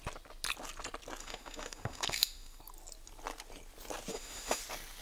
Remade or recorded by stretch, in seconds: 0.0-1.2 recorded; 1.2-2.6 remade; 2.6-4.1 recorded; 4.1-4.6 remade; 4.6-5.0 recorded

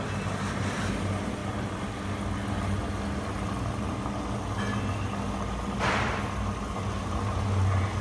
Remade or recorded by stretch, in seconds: 0.0-8.0 recorded

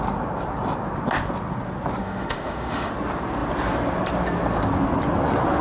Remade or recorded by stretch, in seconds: 0.0-2.0 recorded; 2.0-2.9 remade; 2.9-5.6 recorded

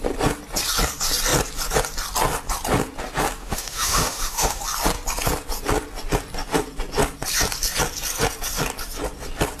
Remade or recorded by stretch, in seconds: 0.0-3.4 recorded; 3.4-4.6 remade; 4.6-9.6 recorded

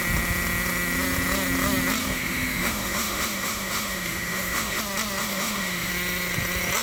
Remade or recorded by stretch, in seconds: 0.0-2.0 recorded; 2.0-4.8 remade; 4.8-5.2 recorded; 5.2-5.9 remade; 5.9-6.8 recorded

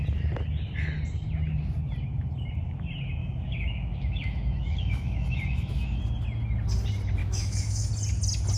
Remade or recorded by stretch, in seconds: 0.0-3.2 recorded; 3.2-6.0 remade; 6.0-7.2 recorded; 7.2-7.9 remade; 7.9-8.6 recorded